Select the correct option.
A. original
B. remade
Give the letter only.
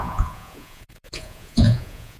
B